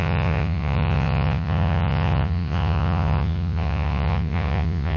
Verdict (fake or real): fake